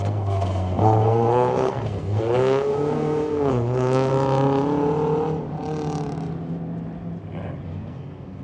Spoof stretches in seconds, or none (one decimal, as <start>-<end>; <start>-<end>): 0.0-4.1; 7.6-8.4